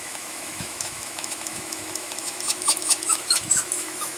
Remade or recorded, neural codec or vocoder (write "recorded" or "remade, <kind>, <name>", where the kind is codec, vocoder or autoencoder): remade, autoencoder, DAC-VAE